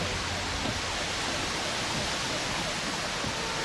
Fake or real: real